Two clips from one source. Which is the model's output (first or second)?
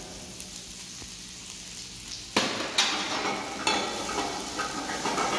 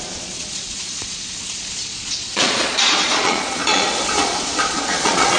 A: second